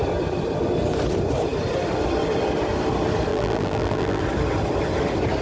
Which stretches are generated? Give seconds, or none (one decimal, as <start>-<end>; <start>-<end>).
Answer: 3.3-4.2